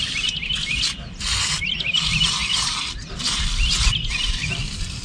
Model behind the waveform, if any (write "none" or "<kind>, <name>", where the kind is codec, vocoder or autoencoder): none